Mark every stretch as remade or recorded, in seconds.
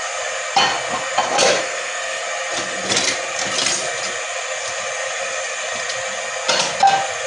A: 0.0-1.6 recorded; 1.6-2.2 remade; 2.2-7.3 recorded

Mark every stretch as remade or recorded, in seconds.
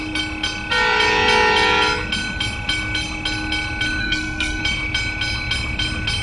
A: 0.0-4.0 recorded; 4.0-4.6 remade; 4.6-6.2 recorded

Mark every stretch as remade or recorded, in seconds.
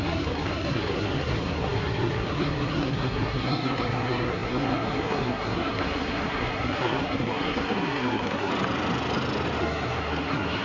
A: 0.0-8.5 remade; 8.5-9.6 recorded; 9.6-10.6 remade